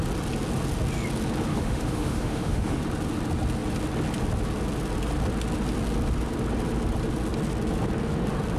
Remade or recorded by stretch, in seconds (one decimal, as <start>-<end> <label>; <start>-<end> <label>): 0.0-1.5 recorded; 1.5-2.8 remade; 2.8-8.6 recorded